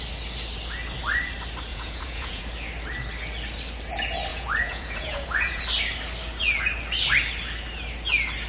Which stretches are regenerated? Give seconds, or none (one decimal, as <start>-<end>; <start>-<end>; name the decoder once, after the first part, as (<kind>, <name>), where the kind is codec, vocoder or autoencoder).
1.7-2.4 (vocoder, Vocos); 4.3-5.6